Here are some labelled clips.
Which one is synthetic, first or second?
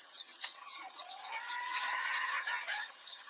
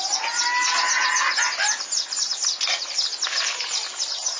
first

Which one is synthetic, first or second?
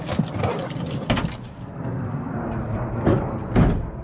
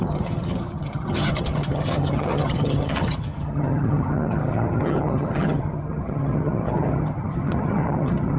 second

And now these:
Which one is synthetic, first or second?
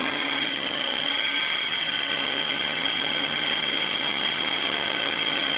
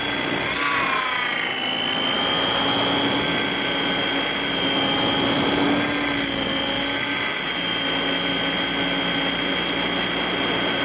first